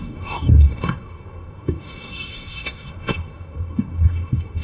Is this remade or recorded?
remade